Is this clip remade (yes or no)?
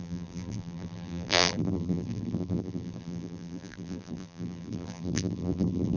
yes